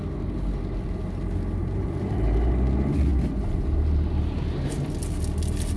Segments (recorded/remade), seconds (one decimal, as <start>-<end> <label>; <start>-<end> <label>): 0.0-1.6 recorded; 1.6-2.5 remade; 2.5-5.8 recorded